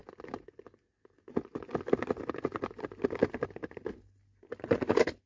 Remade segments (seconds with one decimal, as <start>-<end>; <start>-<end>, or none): none